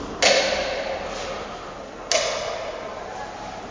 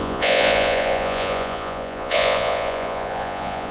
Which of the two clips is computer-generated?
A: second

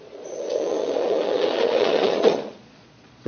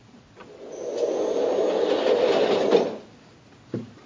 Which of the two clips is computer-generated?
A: first